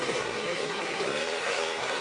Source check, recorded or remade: remade